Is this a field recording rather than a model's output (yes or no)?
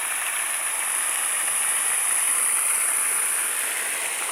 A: yes